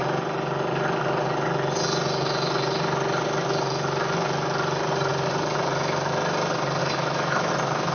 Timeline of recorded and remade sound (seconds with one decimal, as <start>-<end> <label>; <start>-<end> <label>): 0.0-6.8 recorded; 6.8-7.5 remade; 7.5-7.9 recorded